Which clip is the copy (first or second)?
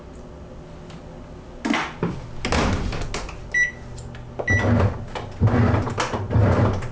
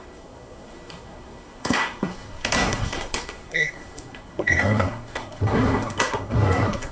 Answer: second